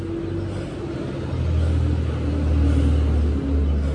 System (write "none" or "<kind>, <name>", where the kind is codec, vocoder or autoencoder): none